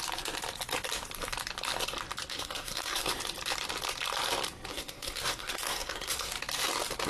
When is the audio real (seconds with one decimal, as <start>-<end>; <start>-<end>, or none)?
0.0-2.3; 3.1-4.7; 6.3-7.1